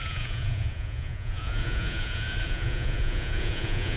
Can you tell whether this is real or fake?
fake